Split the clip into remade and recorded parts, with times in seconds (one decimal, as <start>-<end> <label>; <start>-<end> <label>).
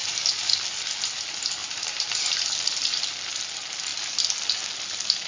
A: 0.0-0.5 remade; 0.5-1.6 recorded; 1.6-3.0 remade; 3.0-5.3 recorded